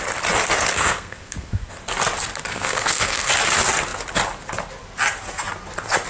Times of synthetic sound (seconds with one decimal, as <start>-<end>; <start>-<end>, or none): 0.7-1.7; 2.5-3.3